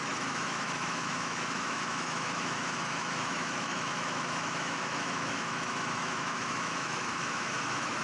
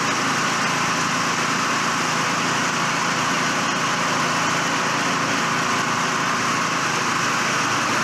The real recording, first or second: second